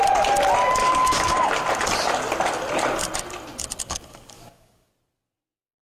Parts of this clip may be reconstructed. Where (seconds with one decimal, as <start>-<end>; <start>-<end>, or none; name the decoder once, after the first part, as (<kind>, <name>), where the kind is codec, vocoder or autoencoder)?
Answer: 0.8-1.5 (codec, DAC); 3.8-4.9